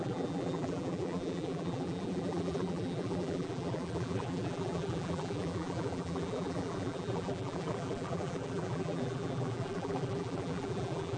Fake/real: fake